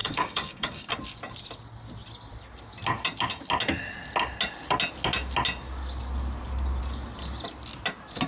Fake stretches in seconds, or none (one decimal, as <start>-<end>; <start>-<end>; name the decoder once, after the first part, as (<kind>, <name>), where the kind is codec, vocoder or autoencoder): 0.0-0.9 (codec, DAC)